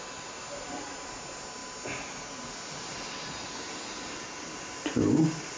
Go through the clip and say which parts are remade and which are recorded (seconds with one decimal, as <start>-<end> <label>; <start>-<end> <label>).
0.0-5.6 recorded